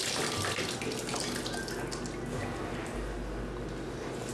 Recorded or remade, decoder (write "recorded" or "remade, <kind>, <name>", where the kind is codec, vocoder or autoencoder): recorded